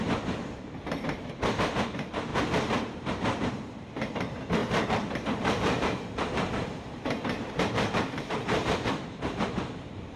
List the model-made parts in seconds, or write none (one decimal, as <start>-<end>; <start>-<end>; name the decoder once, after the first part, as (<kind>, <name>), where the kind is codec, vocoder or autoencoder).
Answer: 0.0-10.2 (vocoder, BigVGAN v2)